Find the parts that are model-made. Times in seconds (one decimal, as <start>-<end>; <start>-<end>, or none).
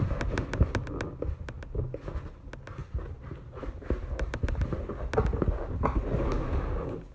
2.8-4.9